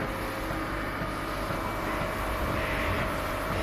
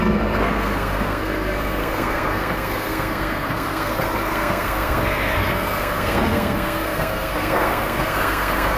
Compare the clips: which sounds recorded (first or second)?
first